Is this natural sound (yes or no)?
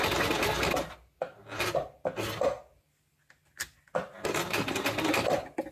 yes